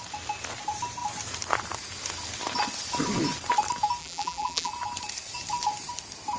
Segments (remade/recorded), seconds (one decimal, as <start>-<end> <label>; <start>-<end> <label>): 0.0-4.0 recorded; 4.0-4.7 remade; 4.7-6.4 recorded